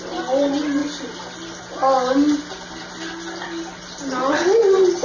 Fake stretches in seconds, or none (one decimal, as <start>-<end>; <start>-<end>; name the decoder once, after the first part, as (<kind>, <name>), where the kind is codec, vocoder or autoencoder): none